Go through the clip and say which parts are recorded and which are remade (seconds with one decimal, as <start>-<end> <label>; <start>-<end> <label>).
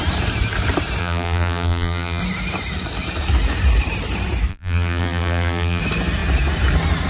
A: 0.0-1.0 recorded; 1.0-2.2 remade; 2.2-4.5 recorded; 4.5-5.8 remade; 5.8-7.1 recorded